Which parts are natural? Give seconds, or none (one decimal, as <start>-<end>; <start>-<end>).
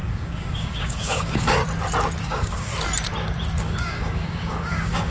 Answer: 1.6-2.2; 2.7-3.6